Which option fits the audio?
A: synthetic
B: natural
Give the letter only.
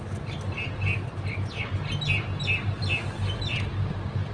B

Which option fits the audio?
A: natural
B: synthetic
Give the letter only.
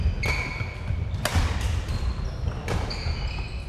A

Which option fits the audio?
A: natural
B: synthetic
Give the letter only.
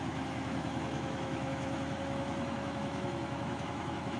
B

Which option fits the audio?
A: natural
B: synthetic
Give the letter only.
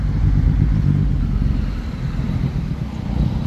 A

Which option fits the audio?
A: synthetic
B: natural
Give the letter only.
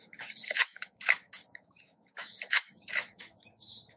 A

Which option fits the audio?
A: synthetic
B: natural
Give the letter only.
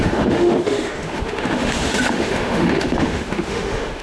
A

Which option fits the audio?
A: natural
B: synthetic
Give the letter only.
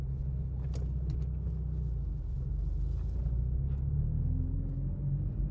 A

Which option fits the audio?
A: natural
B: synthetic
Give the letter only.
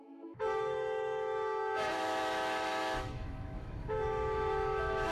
B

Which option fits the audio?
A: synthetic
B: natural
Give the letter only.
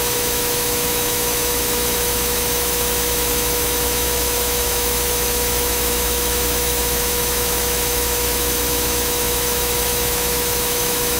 A